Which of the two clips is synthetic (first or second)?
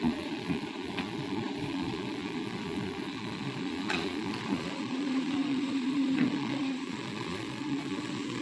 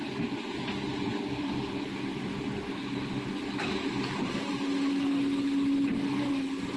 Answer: first